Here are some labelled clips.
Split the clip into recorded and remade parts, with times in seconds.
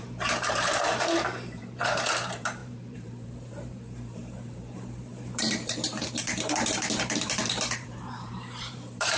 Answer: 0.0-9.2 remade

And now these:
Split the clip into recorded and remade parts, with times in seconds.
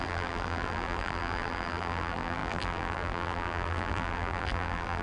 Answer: 0.0-5.0 remade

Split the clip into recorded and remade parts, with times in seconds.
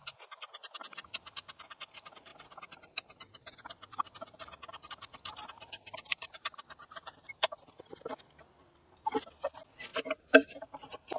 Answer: 0.0-6.1 recorded; 6.1-8.0 remade; 8.0-9.9 recorded; 9.9-11.2 remade